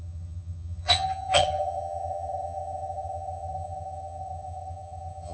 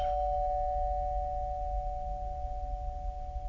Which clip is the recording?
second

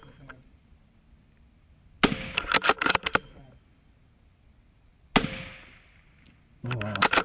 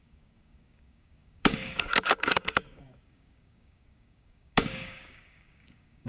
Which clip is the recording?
first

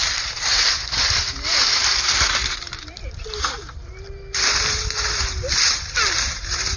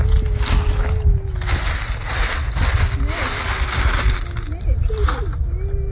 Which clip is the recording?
second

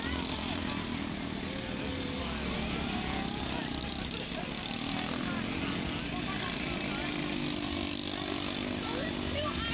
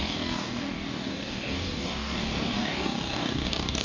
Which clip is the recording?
first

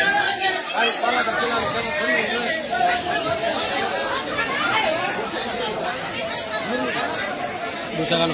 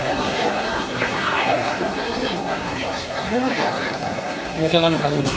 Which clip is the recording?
first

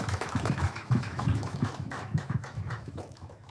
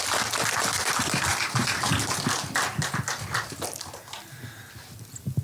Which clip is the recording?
second